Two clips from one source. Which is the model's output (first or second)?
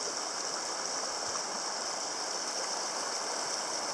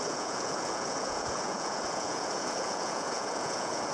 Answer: second